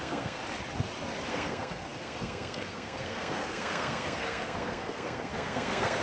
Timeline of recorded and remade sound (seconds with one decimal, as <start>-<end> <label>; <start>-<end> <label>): 0.0-0.4 remade; 0.4-1.3 recorded; 1.3-6.0 remade